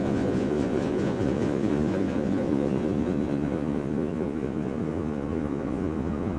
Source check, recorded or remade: remade